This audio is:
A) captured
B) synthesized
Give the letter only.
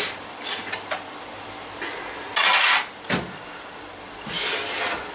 A